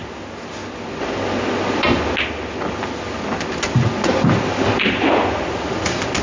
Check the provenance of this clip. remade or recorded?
recorded